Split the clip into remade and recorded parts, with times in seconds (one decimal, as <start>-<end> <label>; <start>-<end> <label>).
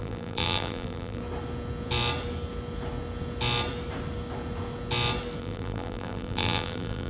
0.0-1.2 remade; 1.2-5.4 recorded; 5.4-7.1 remade